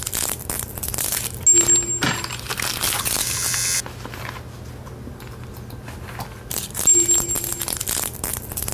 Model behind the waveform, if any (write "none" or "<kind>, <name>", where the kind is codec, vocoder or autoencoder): none